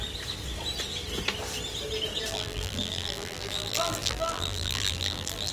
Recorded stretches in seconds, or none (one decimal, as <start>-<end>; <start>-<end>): 0.0-2.3